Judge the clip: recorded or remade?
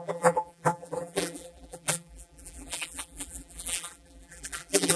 remade